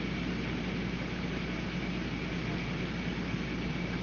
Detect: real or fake real